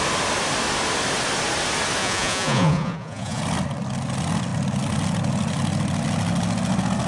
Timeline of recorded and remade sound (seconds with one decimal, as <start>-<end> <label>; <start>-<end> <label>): 0.0-2.0 recorded; 2.0-3.4 remade; 3.4-7.1 recorded